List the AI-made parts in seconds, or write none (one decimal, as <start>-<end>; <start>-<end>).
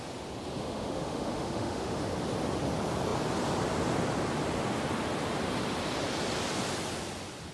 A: 0.6-2.0